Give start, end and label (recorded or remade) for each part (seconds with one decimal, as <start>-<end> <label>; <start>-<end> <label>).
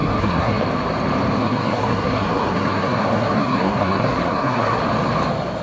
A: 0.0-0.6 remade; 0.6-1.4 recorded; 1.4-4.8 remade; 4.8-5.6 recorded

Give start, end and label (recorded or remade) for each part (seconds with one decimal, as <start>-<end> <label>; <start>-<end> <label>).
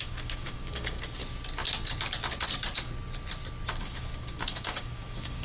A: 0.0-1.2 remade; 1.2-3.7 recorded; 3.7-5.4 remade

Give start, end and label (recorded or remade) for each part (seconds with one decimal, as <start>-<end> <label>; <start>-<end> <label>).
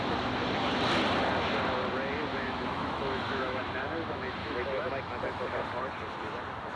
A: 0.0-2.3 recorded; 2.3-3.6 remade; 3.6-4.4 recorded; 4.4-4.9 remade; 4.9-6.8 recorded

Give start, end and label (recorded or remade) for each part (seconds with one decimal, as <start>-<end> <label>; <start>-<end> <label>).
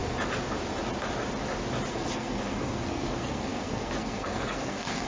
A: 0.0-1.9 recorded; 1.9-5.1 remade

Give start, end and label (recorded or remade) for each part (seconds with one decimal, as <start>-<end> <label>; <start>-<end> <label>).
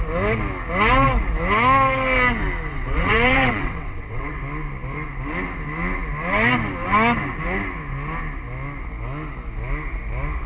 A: 0.0-2.7 recorded; 2.7-4.4 remade; 4.4-10.5 recorded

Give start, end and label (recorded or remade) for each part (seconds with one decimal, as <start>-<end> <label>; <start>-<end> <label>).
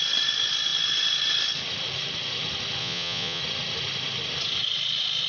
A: 0.0-2.8 recorded; 2.8-3.4 remade; 3.4-5.3 recorded